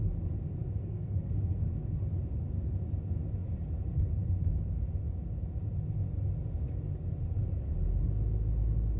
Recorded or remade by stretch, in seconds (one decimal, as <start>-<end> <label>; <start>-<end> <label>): 0.0-0.8 recorded; 0.8-2.0 remade; 2.0-9.0 recorded